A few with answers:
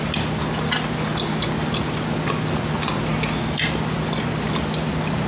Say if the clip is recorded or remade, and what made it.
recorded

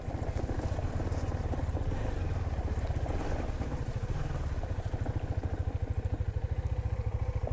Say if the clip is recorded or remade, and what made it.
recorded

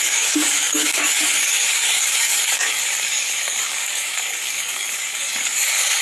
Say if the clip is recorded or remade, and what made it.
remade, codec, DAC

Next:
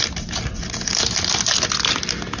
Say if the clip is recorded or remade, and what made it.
recorded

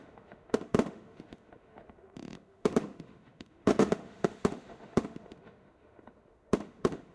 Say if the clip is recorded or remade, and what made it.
remade, autoencoder, DAC-VAE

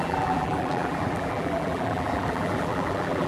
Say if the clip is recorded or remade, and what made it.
remade, vocoder, BigVGAN v2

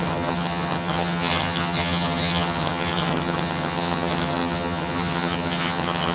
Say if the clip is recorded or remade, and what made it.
remade, vocoder, HiFi-GAN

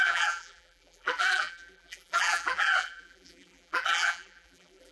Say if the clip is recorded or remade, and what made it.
remade, vocoder, BigVGAN v2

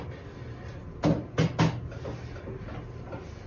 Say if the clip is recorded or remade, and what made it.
recorded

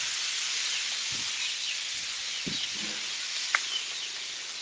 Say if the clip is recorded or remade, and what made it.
recorded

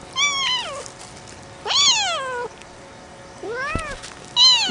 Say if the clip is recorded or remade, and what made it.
recorded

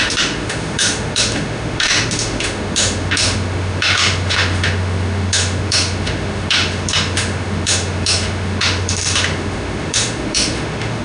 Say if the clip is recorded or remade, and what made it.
remade, autoencoder, DAC-VAE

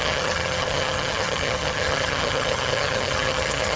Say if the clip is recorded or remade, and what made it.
remade, vocoder, HiFi-GAN